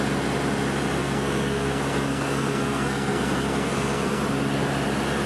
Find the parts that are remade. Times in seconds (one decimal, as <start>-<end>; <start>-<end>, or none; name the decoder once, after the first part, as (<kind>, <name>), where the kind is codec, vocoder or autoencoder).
1.0-4.2 (codec, SNAC)